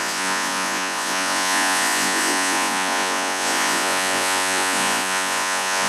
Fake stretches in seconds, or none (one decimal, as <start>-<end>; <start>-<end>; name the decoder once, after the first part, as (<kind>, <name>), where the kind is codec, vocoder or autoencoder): 0.0-5.9 (vocoder, Vocos)